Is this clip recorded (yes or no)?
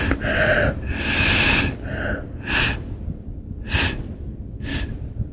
yes